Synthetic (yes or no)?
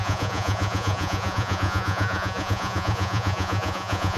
yes